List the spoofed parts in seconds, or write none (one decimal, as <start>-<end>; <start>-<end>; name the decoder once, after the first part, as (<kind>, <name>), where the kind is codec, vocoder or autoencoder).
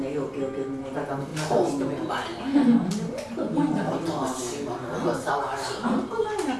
none